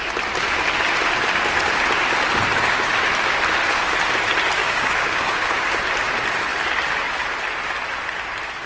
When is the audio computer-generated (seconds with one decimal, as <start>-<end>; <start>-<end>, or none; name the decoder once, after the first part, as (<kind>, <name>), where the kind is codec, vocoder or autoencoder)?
4.6-5.8 (codec, DAC)